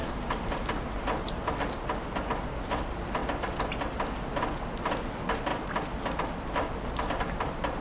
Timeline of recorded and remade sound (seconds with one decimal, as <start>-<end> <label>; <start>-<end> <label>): 0.0-7.8 recorded